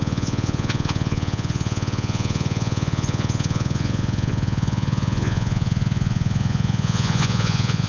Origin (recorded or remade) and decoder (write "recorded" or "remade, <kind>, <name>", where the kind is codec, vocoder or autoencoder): remade, vocoder, Vocos